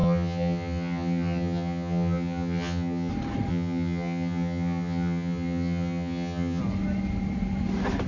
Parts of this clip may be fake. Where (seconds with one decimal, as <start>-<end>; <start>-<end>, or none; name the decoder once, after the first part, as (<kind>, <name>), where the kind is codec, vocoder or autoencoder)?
0.0-3.1 (vocoder, HiFi-GAN); 3.5-6.6